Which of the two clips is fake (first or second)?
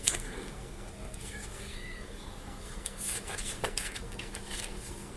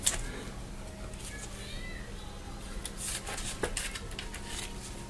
first